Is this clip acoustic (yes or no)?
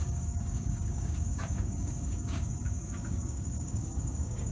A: no